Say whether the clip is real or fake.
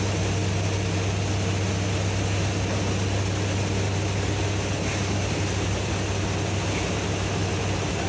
real